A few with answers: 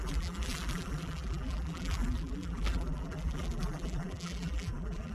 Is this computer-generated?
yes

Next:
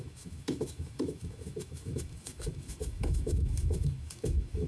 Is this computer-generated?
yes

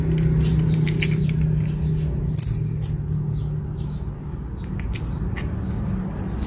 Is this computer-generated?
no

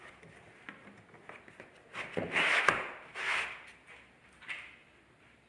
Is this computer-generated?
no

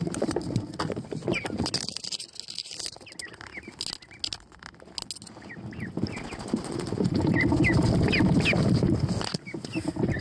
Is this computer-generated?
no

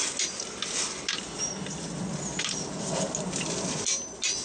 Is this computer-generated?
no